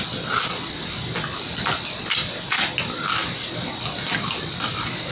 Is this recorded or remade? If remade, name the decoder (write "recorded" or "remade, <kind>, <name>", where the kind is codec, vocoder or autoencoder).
recorded